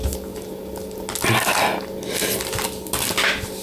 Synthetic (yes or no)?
no